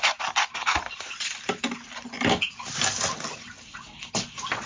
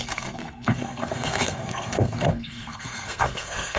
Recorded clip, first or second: first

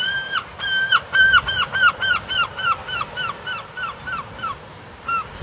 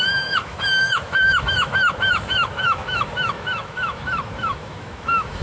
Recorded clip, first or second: first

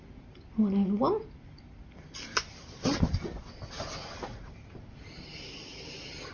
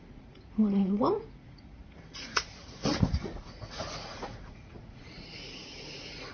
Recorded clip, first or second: first